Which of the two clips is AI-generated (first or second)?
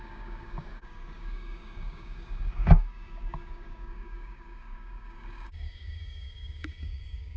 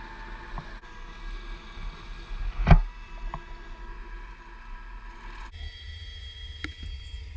first